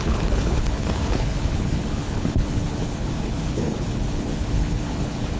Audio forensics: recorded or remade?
remade